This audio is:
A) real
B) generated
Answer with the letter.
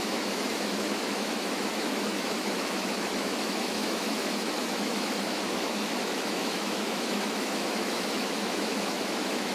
B